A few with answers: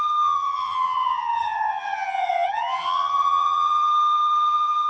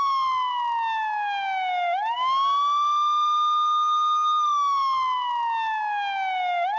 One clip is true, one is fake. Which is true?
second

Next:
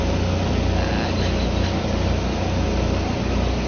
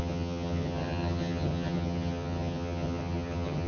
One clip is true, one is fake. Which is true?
first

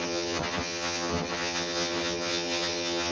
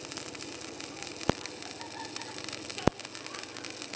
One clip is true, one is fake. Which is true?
second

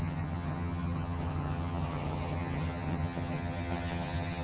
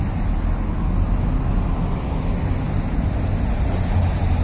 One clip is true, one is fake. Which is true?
second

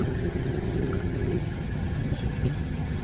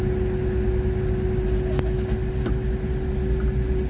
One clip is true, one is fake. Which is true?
second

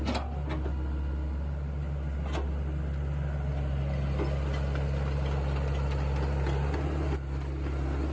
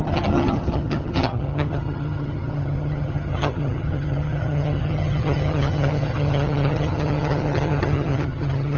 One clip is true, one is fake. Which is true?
first